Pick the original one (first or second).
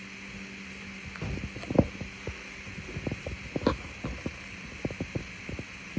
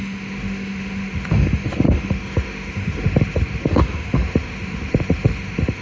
first